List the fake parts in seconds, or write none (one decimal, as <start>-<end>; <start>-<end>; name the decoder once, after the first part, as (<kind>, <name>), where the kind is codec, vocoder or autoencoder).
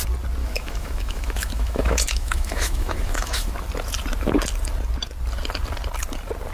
0.4-3.5 (autoencoder, DAC-VAE)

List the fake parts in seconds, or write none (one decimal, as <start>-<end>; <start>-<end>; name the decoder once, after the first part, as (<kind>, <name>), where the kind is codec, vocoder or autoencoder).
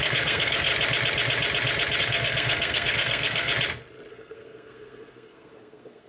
0.0-0.7 (codec, SNAC); 2.0-3.5; 4.1-6.1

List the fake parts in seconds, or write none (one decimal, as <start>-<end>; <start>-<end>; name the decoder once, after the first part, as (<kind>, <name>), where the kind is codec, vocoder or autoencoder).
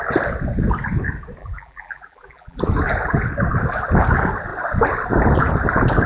1.4-2.6 (vocoder, BigVGAN v2)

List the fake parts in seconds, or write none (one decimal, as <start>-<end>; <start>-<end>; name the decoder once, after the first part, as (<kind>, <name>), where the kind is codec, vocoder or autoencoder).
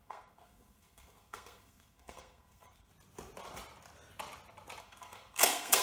0.0-2.9 (codec, SNAC); 4.8-5.8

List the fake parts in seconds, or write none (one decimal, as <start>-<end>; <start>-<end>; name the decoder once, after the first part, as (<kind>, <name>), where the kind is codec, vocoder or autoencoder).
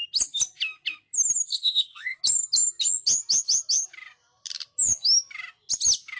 1.5-2.2 (codec, SNAC)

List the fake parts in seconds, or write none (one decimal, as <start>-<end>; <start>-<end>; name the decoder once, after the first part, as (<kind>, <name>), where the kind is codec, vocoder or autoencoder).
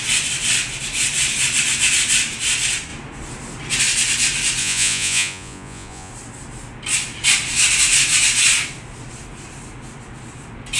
4.6-6.1 (vocoder, Vocos)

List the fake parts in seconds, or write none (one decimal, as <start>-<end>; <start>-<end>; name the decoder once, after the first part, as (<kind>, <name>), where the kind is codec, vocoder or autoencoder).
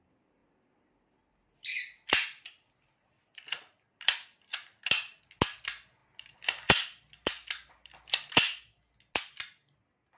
none